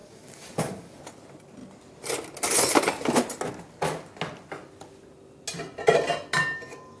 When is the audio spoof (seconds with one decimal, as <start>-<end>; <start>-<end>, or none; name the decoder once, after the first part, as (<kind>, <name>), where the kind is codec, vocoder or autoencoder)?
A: 0.0-1.0 (codec, DAC)